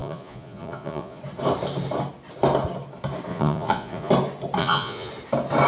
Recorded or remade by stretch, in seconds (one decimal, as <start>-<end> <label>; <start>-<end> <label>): 0.0-1.2 remade; 1.2-3.3 recorded; 3.3-4.1 remade; 4.1-4.6 recorded; 4.6-5.1 remade; 5.1-5.7 recorded